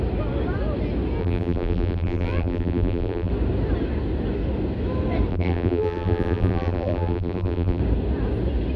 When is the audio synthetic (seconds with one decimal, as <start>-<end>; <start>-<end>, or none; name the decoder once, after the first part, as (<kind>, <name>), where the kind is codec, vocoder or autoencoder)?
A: 1.2-3.3 (vocoder, BigVGAN v2); 5.3-7.8